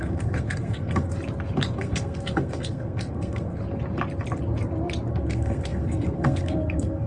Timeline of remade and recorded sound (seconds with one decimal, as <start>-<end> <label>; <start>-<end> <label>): 0.0-1.1 remade; 1.1-1.8 recorded; 1.8-3.6 remade; 3.6-5.1 recorded; 5.1-7.1 remade